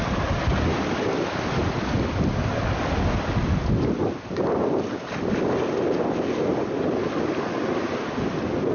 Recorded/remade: recorded